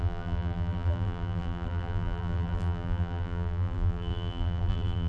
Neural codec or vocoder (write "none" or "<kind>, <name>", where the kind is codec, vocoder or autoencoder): vocoder, BigVGAN v2